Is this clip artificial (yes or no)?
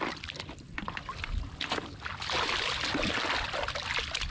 no